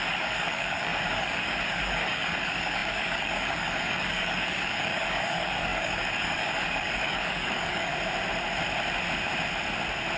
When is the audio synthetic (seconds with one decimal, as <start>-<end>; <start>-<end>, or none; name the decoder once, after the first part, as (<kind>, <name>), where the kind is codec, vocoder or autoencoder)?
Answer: 0.0-7.9 (codec, DAC)